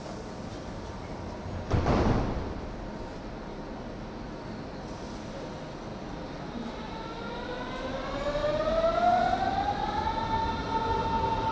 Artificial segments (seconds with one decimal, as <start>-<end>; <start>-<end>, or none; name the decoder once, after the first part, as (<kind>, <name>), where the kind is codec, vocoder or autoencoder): 0.5-1.1 (vocoder, BigVGAN v2); 5.9-6.9

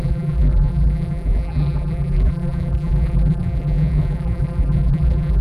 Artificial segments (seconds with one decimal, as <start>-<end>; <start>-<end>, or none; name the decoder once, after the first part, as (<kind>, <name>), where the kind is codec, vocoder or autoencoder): 0.0-5.4 (vocoder, BigVGAN v2)

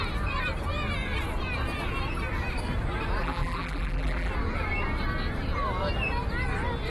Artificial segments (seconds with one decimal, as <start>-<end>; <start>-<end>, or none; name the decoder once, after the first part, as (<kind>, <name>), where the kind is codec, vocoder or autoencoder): 3.2-4.3 (vocoder, BigVGAN v2)

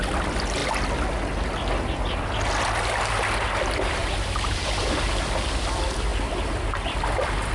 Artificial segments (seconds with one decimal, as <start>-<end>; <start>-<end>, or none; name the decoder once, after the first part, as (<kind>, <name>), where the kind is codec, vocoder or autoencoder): 4.0-5.1 (vocoder, BigVGAN v2)

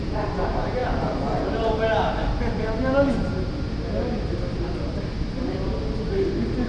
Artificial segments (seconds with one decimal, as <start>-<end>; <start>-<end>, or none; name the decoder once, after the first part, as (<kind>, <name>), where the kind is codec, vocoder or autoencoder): 0.8-2.3 (vocoder, BigVGAN v2)

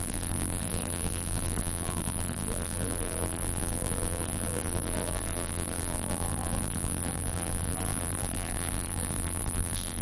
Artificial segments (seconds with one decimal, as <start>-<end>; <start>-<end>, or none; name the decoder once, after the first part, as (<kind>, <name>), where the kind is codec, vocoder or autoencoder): 0.0-10.0 (vocoder, BigVGAN v2)